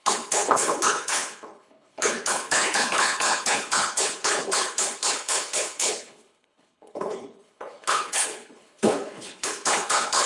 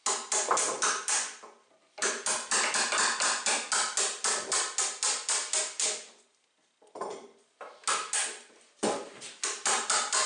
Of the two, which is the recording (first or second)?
second